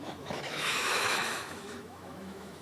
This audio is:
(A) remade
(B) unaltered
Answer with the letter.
A